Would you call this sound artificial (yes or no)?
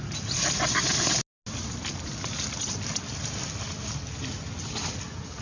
no